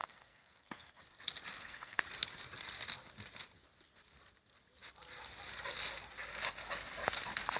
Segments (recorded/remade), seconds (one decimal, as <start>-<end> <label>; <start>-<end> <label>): 0.0-1.0 remade; 1.0-1.5 recorded; 1.5-2.0 remade; 2.0-7.6 recorded